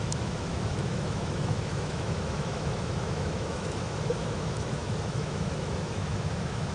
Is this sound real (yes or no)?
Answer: no